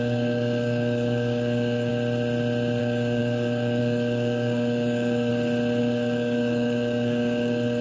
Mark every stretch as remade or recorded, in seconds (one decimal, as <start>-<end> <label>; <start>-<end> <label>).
0.0-1.9 remade; 1.9-2.8 recorded; 2.8-5.3 remade; 5.3-5.8 recorded; 5.8-7.8 remade